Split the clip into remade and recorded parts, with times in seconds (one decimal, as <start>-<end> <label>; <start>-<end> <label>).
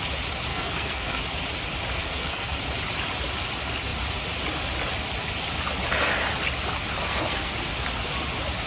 0.0-0.5 recorded; 0.5-1.2 remade; 1.2-2.0 recorded; 2.0-2.6 remade; 2.6-7.0 recorded; 7.0-7.5 remade; 7.5-8.7 recorded